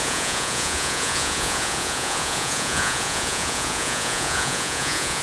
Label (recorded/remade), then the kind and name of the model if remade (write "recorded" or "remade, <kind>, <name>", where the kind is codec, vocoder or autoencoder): remade, vocoder, Vocos